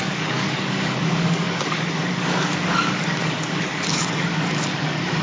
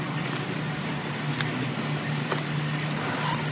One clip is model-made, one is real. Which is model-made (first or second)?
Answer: first